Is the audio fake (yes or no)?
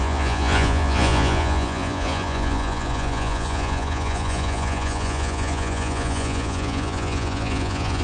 yes